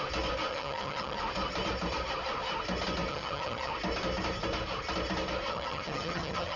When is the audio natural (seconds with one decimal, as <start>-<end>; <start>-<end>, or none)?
0.0-0.5; 1.2-3.1; 3.7-5.5